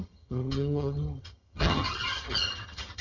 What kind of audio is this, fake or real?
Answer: fake